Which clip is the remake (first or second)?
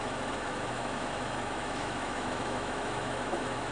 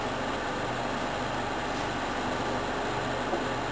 first